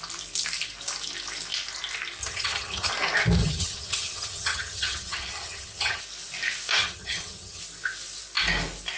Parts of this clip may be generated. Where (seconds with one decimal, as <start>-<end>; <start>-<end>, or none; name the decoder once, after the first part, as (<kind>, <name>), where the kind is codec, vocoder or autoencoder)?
2.2-2.9 (vocoder, HiFi-GAN); 3.4-6.0; 6.8-7.6